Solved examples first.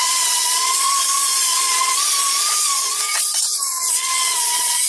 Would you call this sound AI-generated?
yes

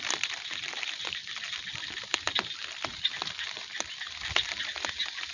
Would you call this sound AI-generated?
no